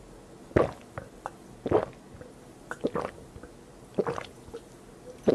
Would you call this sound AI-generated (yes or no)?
no